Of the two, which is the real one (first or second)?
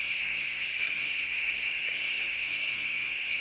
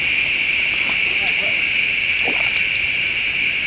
second